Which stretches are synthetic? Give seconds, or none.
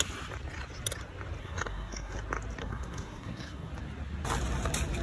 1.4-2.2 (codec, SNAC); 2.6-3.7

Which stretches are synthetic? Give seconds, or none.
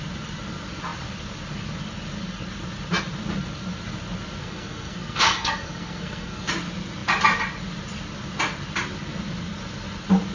4.4-6.5 (codec, SNAC)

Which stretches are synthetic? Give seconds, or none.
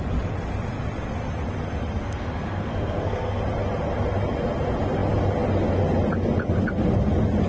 2.0-3.4 (codec, SNAC)